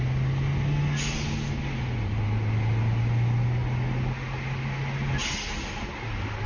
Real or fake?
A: real